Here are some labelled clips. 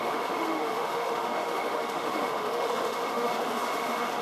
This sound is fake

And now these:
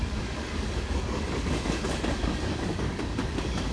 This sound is fake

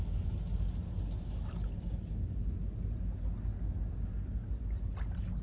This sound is real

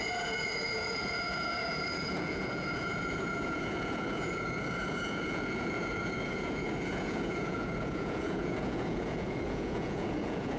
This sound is fake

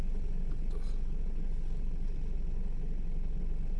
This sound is real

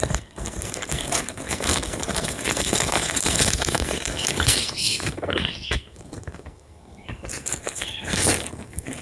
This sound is fake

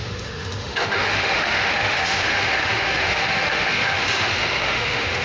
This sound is fake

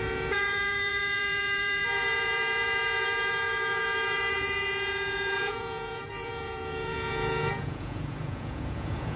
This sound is fake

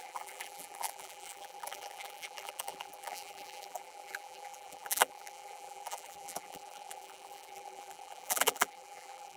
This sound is fake